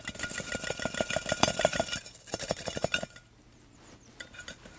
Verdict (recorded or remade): recorded